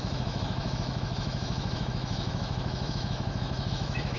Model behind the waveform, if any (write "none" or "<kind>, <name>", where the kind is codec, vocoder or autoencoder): autoencoder, DAC-VAE